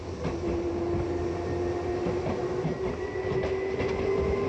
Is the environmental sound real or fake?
real